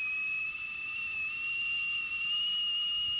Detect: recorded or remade recorded